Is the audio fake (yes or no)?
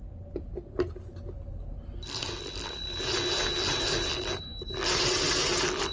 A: no